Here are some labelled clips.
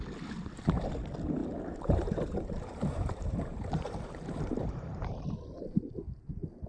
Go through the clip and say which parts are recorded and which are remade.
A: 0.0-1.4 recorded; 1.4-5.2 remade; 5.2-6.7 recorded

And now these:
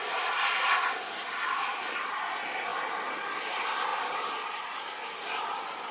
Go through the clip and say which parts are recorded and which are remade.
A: 0.0-5.9 recorded

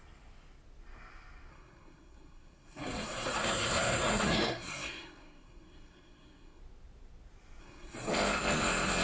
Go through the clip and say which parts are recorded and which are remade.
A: 0.0-1.5 recorded; 1.5-6.6 remade; 6.6-7.6 recorded; 7.6-8.1 remade; 8.1-9.0 recorded

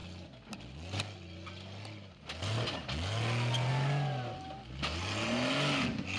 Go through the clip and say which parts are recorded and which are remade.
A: 0.0-6.2 recorded

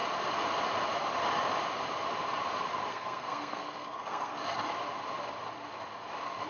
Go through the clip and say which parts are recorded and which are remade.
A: 0.0-2.9 recorded; 2.9-4.3 remade; 4.3-6.5 recorded